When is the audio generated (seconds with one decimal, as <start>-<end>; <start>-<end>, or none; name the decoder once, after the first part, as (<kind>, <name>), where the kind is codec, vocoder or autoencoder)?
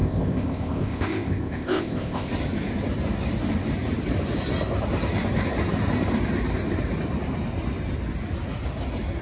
0.0-2.3 (codec, ZipCodec)